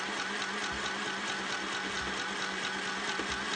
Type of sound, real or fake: real